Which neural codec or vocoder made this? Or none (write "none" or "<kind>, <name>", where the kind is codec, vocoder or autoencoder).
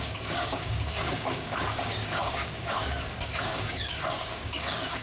codec, DAC